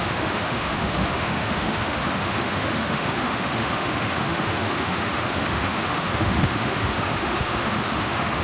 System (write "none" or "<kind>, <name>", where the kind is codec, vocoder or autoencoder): autoencoder, DAC-VAE